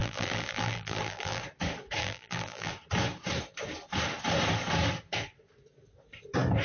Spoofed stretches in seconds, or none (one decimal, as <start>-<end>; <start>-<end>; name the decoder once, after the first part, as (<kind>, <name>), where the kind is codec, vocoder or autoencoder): 0.0-1.4 (vocoder, BigVGAN v2); 2.0-2.7